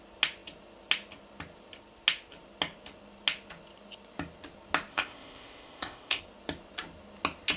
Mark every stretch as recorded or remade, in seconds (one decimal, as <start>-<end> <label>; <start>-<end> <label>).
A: 0.0-4.9 recorded; 4.9-6.2 remade; 6.2-7.6 recorded

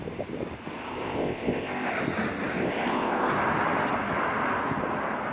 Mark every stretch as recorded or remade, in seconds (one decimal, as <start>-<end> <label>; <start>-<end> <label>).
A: 0.0-0.8 recorded; 0.8-2.0 remade; 2.0-2.5 recorded; 2.5-3.3 remade; 3.3-5.3 recorded

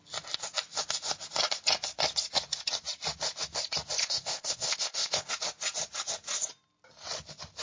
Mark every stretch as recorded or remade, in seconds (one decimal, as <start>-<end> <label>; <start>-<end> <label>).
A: 0.0-4.0 recorded; 4.0-5.3 remade; 5.3-7.6 recorded

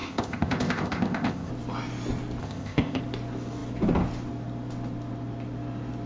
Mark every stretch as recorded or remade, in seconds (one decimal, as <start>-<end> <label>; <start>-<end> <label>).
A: 0.0-1.5 remade; 1.5-2.4 recorded; 2.4-3.0 remade; 3.0-6.1 recorded

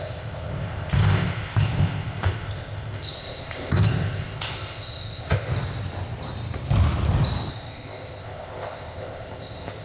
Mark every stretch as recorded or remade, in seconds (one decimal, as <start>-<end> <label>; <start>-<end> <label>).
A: 0.0-5.5 remade; 5.5-7.5 recorded; 7.5-9.8 remade

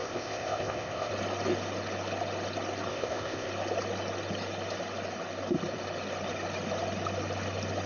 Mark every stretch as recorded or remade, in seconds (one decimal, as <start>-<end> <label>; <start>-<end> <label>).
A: 0.0-1.1 remade; 1.1-2.9 recorded; 2.9-3.5 remade; 3.5-7.9 recorded

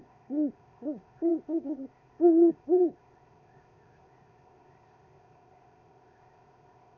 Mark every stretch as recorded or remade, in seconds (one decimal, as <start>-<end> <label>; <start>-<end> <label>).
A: 0.0-7.0 remade

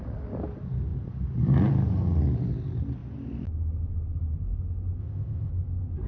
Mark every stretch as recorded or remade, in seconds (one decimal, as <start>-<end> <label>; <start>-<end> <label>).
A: 0.0-5.0 recorded; 5.0-5.5 remade; 5.5-6.1 recorded